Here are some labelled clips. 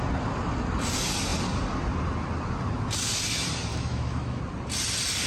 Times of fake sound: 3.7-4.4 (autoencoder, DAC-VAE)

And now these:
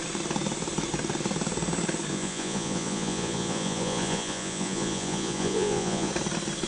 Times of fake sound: 2.1-6.1 (vocoder, Vocos)

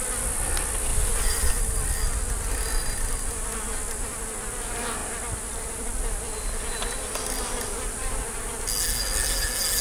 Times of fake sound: 0.9-1.5 (vocoder, BigVGAN v2); 5.0-8.1

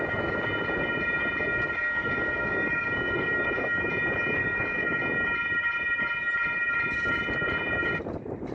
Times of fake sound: 1.5-3.8 (codec, DAC); 4.4-5.0

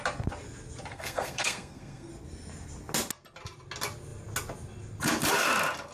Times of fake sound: 0.9-2.1 (codec, SNAC)

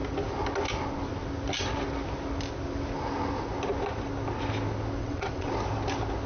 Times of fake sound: 5.0-5.5 (vocoder, WaveNeXt)

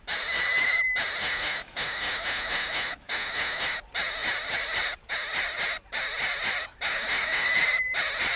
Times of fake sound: 1.2-3.8 (autoencoder, DAC-VAE); 6.9-7.5